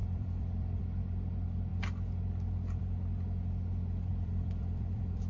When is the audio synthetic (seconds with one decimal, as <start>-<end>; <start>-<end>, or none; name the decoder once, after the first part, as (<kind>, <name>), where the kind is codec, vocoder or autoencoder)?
0.0-0.8 (vocoder, BigVGAN v2); 4.1-5.3